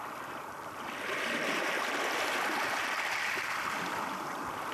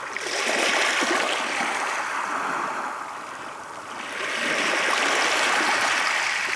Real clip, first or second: second